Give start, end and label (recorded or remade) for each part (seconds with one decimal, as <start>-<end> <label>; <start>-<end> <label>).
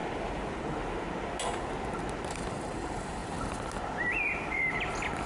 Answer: 0.0-0.6 remade; 0.6-5.3 recorded